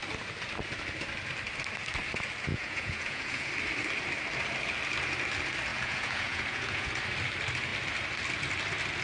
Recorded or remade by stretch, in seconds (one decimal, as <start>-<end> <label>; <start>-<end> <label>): 0.0-2.5 recorded; 2.5-3.5 remade; 3.5-5.7 recorded; 5.7-6.9 remade; 6.9-9.0 recorded